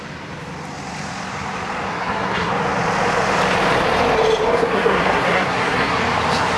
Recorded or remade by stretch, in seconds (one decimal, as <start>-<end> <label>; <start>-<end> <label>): 0.0-1.9 recorded; 1.9-2.5 remade; 2.5-4.5 recorded; 4.5-6.0 remade; 6.0-6.6 recorded